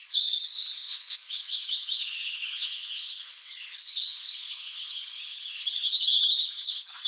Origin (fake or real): fake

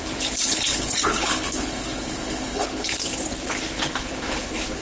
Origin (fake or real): fake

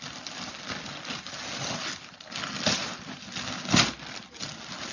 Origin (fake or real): real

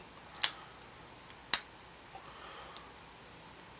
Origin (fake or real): real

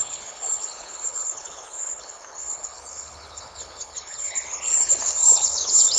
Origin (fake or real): fake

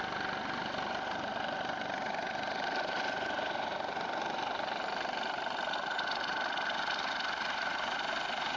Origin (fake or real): real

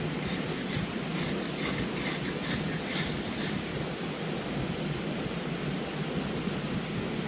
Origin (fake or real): real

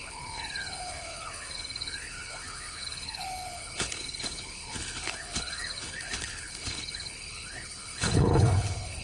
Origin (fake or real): fake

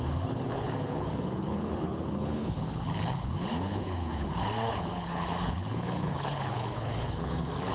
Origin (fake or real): fake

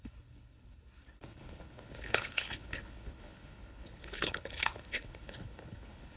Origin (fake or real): fake